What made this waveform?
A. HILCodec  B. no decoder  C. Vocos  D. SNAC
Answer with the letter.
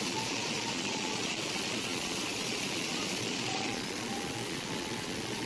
C